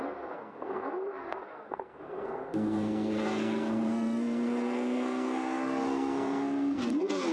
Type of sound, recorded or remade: remade